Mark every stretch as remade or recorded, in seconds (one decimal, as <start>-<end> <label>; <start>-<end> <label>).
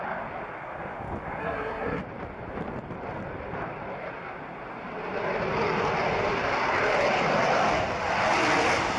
0.0-1.4 recorded; 1.4-2.0 remade; 2.0-9.0 recorded